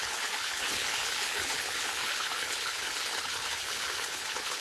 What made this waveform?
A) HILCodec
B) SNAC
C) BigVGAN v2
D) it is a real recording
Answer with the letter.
A